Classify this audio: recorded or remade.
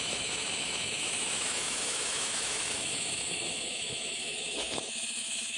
remade